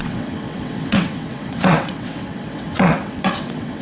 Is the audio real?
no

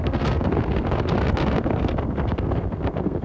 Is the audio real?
no